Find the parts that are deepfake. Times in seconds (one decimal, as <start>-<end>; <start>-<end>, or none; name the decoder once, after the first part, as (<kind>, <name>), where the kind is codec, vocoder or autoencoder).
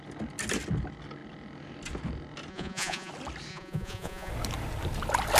2.5-3.1 (vocoder, Vocos); 3.5-4.3